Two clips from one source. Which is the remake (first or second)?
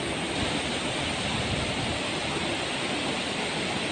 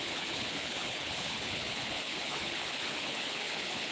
second